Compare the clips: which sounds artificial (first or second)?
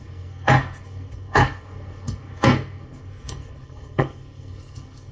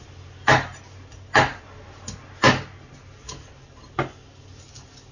first